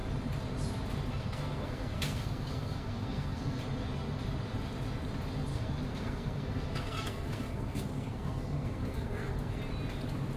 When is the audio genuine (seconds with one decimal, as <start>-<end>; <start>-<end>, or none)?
0.0-1.1; 3.6-5.5; 9.6-10.4